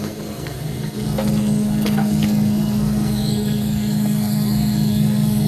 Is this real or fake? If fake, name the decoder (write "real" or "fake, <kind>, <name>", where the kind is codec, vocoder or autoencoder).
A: fake, codec, SNAC